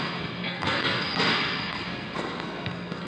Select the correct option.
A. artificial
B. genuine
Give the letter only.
A